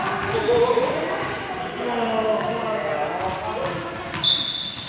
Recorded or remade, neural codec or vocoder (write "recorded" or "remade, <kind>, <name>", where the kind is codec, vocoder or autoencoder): recorded